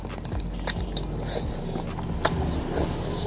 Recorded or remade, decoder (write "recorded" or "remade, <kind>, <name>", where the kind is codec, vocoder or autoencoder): recorded